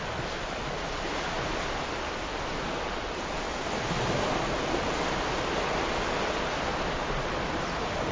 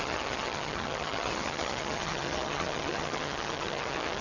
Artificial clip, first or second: second